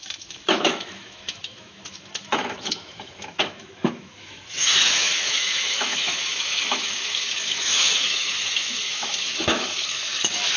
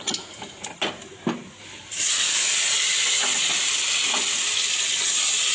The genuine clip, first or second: second